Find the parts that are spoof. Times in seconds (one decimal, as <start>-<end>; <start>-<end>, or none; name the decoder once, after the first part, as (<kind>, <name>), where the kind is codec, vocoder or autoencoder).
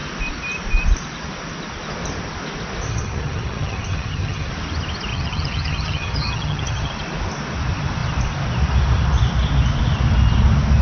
2.9-4.5 (vocoder, HiFi-GAN); 5.1-6.9